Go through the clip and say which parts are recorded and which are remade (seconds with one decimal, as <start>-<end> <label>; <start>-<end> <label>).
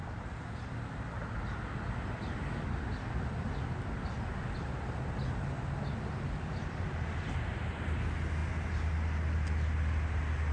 0.0-10.5 recorded